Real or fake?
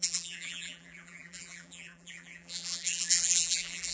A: fake